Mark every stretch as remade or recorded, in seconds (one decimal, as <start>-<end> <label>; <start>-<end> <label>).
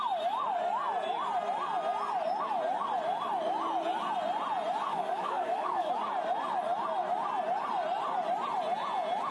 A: 0.0-4.9 recorded; 4.9-5.9 remade; 5.9-9.3 recorded